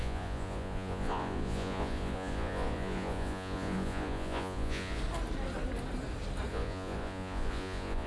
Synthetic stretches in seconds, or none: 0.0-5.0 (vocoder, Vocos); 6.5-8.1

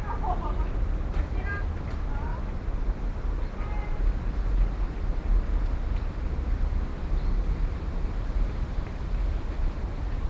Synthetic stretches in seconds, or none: none

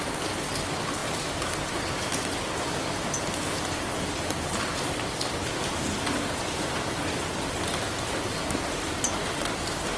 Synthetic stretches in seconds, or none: none